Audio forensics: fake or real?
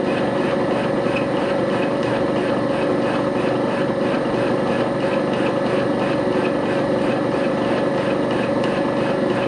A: real